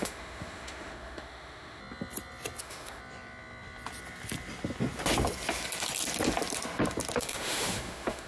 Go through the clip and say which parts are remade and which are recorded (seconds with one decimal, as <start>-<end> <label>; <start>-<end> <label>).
0.0-1.8 remade; 1.8-2.6 recorded; 2.6-3.0 remade; 3.0-7.2 recorded; 7.2-8.3 remade